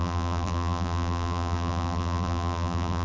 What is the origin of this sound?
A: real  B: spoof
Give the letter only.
B